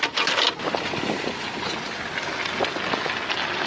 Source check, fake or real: real